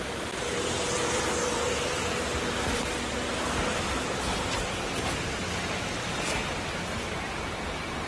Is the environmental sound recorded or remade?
recorded